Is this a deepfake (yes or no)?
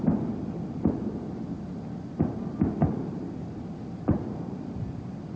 no